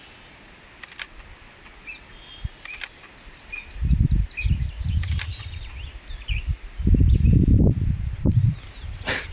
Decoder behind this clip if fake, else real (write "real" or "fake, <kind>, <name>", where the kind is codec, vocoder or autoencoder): real